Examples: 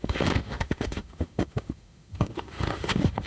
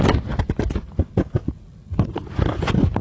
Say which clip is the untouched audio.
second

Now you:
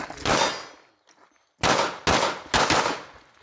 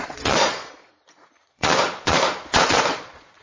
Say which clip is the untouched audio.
first